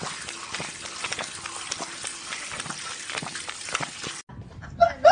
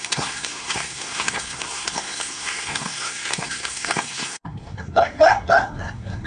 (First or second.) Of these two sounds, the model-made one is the second